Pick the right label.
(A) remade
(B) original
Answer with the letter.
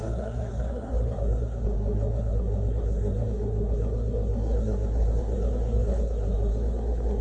A